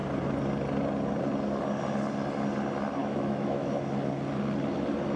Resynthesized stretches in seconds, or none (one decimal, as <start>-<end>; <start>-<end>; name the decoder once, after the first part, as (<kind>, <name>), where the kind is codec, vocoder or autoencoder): 3.0-3.7 (autoencoder, DAC-VAE)